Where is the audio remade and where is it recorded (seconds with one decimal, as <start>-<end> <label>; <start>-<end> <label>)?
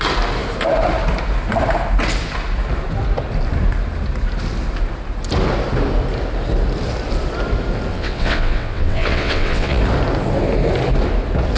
0.0-7.9 recorded; 7.9-9.8 remade; 9.8-11.6 recorded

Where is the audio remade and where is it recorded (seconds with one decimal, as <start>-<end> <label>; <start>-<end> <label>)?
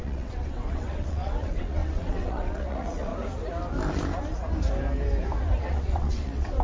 0.0-3.1 remade; 3.1-5.6 recorded; 5.6-6.6 remade